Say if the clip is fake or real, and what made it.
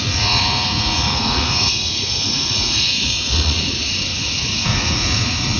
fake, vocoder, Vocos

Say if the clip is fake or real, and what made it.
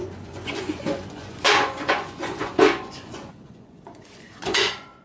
fake, vocoder, Vocos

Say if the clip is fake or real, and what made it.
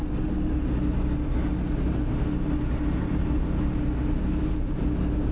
real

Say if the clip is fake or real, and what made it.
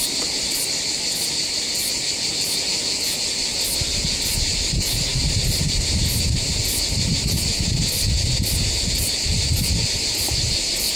real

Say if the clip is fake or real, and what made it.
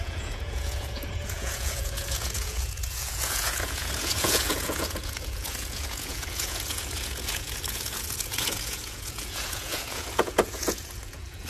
fake, vocoder, Vocos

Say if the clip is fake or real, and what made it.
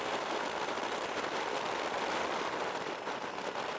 real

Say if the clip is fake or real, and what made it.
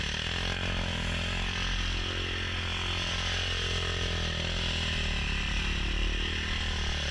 real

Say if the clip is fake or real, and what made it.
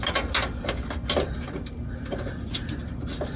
real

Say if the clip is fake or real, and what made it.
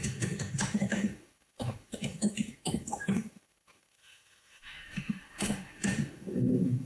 fake, autoencoder, DAC-VAE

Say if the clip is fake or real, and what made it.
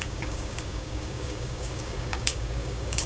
fake, codec, DAC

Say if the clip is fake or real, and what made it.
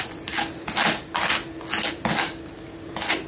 real